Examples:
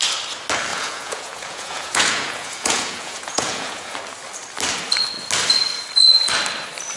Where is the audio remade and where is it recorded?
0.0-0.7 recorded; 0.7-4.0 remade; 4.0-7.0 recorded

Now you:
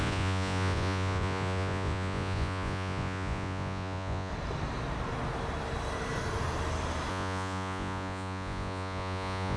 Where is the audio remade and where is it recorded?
0.0-4.3 remade; 4.3-7.1 recorded; 7.1-9.6 remade

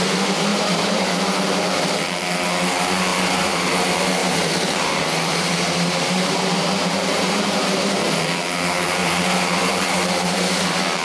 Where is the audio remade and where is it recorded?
0.0-0.5 recorded; 0.5-2.0 remade; 2.0-3.1 recorded; 3.1-3.7 remade; 3.7-4.2 recorded; 4.2-8.2 remade; 8.2-9.0 recorded; 9.0-11.0 remade

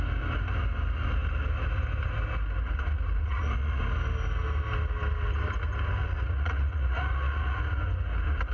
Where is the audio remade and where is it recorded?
0.0-3.2 recorded; 3.2-3.8 remade; 3.8-6.0 recorded; 6.0-7.8 remade; 7.8-8.5 recorded

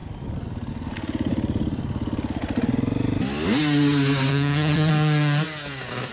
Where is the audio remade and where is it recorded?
0.0-4.3 recorded; 4.3-4.9 remade; 4.9-6.1 recorded

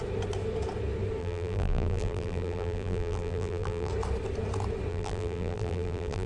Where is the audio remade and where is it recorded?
0.0-1.2 recorded; 1.2-3.9 remade; 3.9-4.9 recorded; 4.9-6.3 remade

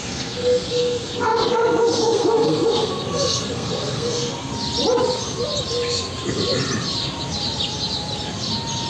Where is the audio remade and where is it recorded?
0.0-4.5 remade; 4.5-8.9 recorded

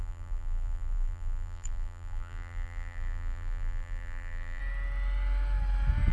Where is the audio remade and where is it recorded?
0.0-4.6 remade; 4.6-6.1 recorded